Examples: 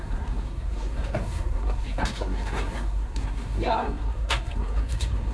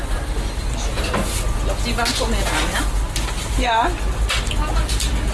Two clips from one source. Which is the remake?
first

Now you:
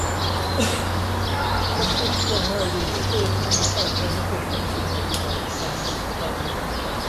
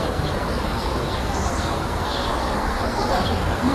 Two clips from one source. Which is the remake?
second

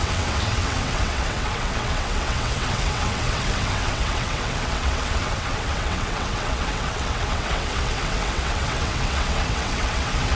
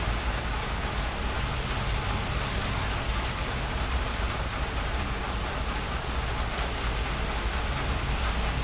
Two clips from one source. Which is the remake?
first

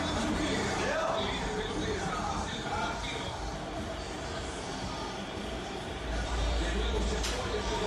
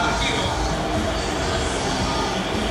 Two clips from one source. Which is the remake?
first